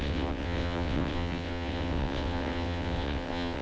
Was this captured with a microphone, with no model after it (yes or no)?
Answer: no